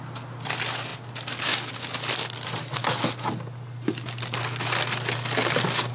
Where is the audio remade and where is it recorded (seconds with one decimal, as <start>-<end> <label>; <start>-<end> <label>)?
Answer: 0.0-5.9 recorded